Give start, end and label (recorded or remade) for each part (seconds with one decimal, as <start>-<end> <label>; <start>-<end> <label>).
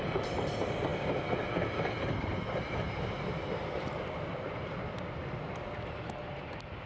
0.0-6.9 recorded